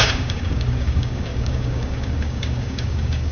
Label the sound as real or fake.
fake